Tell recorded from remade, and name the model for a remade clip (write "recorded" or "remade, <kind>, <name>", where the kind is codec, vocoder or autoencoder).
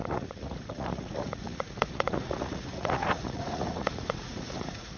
remade, vocoder, Vocos